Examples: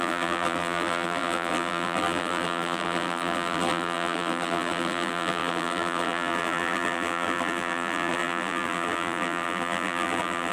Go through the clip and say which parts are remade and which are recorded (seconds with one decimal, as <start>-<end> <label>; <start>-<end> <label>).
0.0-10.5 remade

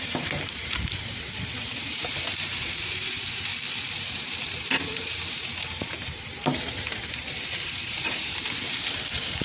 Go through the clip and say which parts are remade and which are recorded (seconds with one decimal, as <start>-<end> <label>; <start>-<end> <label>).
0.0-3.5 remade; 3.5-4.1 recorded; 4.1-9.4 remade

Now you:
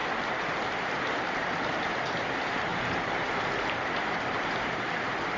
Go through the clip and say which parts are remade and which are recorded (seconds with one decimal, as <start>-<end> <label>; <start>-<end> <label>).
0.0-5.4 remade

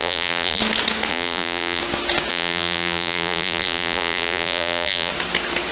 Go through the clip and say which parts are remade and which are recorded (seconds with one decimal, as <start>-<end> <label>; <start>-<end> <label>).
0.0-0.6 remade; 0.6-1.1 recorded; 1.1-1.8 remade; 1.8-2.3 recorded; 2.3-5.1 remade; 5.1-5.7 recorded